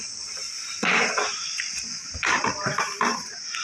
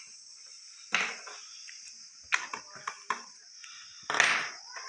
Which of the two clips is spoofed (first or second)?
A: first